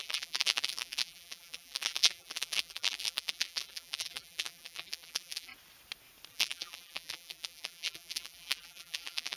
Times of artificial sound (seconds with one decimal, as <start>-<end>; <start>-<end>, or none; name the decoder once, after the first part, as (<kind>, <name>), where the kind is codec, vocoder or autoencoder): 0.0-5.5 (vocoder, BigVGAN v2); 6.3-9.4